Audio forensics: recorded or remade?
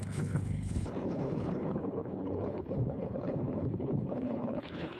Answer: remade